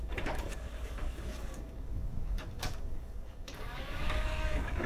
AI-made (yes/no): yes